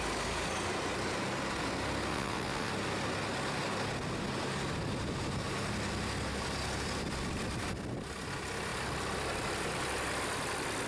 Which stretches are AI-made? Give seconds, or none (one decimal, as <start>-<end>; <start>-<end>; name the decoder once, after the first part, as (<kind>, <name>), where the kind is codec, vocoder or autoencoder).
2.1-2.7 (vocoder, WaveNeXt)